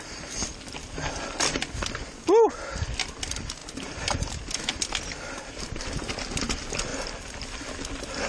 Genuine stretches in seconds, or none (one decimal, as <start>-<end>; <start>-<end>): 0.0-8.3